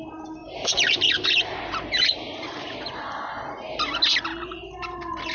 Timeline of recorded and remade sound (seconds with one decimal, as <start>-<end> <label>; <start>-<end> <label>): 0.0-0.4 recorded; 0.4-3.6 remade; 3.6-5.3 recorded

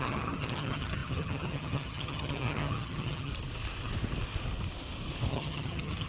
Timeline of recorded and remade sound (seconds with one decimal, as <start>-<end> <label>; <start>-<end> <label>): 0.0-3.3 remade; 3.3-5.3 recorded; 5.3-6.1 remade

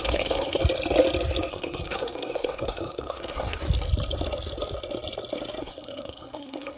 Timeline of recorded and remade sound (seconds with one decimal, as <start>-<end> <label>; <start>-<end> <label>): 0.0-0.6 remade; 0.6-1.5 recorded; 1.5-3.6 remade; 3.6-5.6 recorded; 5.6-6.8 remade

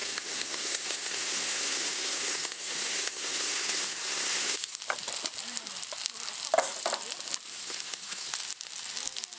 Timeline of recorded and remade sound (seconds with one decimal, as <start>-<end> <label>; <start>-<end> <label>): 0.0-4.8 remade; 4.8-7.5 recorded; 7.5-8.3 remade; 8.3-9.4 recorded

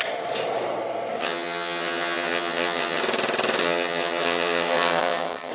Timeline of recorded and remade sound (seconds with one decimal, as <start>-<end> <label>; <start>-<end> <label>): 0.0-1.2 recorded; 1.2-3.0 remade; 3.0-3.6 recorded; 3.6-5.5 remade

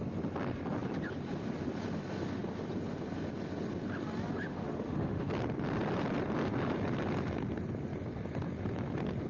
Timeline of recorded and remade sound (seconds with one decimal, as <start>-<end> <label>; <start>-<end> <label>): 0.0-4.5 recorded; 4.5-5.3 remade; 5.3-9.3 recorded